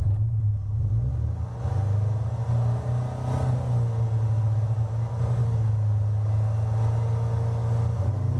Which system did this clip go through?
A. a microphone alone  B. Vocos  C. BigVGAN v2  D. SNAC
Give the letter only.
A